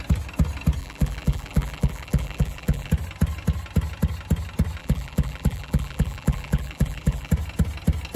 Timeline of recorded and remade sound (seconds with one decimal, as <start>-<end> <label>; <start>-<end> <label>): 0.0-0.8 recorded; 0.8-2.9 remade; 2.9-4.8 recorded; 4.8-7.3 remade; 7.3-8.2 recorded